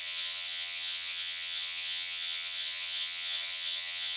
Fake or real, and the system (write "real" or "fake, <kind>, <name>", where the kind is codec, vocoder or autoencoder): fake, vocoder, HiFi-GAN